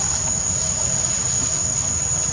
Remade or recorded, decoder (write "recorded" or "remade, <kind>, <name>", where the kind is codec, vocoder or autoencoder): recorded